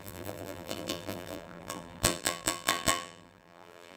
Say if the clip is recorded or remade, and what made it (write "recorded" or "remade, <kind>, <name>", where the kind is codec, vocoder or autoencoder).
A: remade, vocoder, BigVGAN v2